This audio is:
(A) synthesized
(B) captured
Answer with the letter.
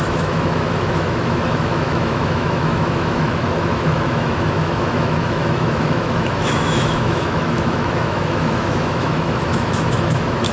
A